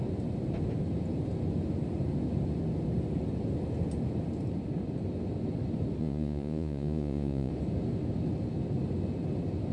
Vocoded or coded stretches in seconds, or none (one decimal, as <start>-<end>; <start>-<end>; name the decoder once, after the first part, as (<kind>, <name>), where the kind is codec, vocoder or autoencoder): 6.0-7.5 (vocoder, Vocos)